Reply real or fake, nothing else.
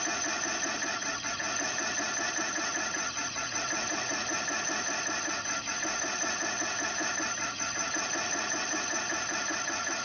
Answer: fake